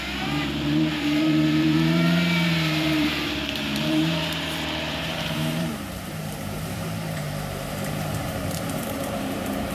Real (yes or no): no